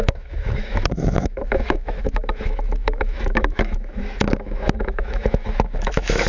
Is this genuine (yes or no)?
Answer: no